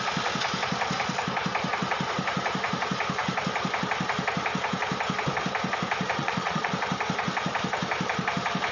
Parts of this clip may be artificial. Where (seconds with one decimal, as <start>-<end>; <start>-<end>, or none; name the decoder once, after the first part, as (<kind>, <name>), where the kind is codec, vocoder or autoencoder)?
6.2-6.7 (vocoder, Vocos)